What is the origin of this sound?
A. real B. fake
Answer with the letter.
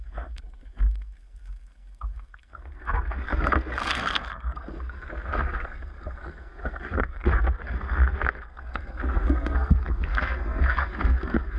B